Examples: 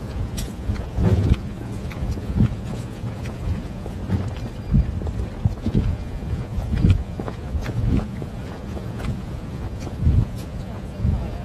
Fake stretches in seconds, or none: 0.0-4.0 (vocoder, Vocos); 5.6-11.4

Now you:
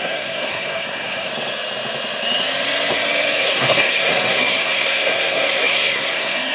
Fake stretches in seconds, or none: 0.0-1.3 (codec, SNAC); 3.4-6.5

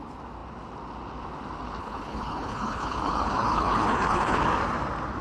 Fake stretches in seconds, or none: 1.8-4.4 (codec, HILCodec)